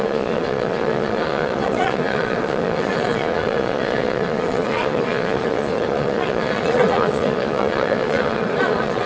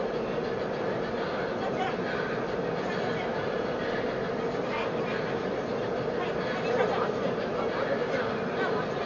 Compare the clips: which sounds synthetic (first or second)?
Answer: first